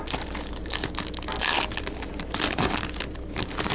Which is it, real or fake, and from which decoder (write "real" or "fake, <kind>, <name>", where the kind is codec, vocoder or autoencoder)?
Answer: real